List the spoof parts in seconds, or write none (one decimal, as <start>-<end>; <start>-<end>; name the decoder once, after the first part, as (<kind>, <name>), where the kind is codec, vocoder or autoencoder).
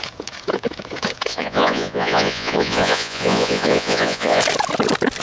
1.3-4.4 (vocoder, Vocos)